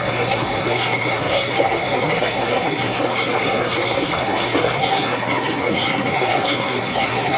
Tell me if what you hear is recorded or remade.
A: remade